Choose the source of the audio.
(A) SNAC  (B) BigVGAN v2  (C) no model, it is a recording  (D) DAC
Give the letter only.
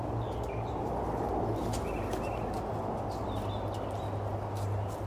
C